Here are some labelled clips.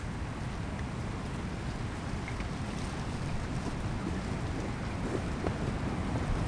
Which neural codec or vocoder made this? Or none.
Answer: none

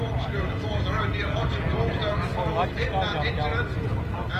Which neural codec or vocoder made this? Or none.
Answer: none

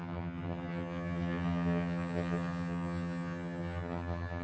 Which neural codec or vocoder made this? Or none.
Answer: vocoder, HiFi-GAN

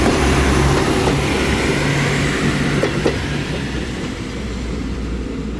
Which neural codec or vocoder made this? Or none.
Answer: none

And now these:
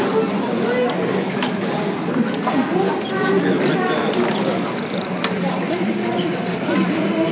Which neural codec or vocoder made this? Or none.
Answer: none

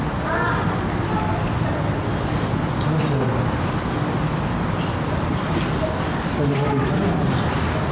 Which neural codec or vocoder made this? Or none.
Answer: none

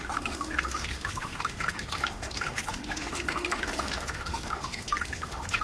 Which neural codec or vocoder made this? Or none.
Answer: autoencoder, DAC-VAE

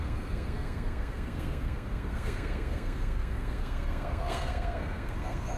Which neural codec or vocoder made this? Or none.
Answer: codec, SNAC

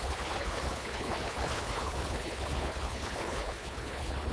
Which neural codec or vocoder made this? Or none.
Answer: codec, HILCodec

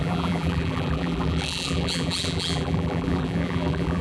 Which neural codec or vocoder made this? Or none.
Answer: vocoder, BigVGAN v2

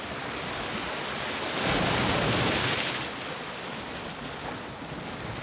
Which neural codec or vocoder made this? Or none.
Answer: none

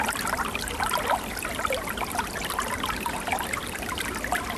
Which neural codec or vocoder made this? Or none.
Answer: none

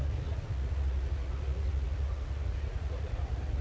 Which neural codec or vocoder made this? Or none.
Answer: vocoder, Vocos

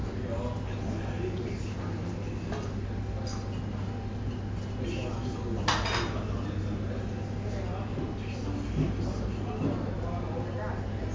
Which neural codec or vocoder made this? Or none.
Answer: none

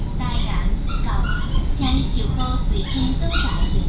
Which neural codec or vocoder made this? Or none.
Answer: none